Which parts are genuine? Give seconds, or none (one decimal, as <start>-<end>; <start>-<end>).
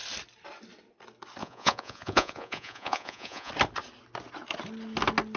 0.0-1.4; 3.5-5.4